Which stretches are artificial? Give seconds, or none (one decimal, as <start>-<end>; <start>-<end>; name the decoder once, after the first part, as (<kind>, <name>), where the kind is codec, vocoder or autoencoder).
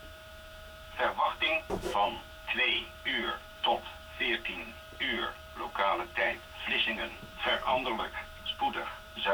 0.0-4.7 (autoencoder, DAC-VAE); 6.2-9.3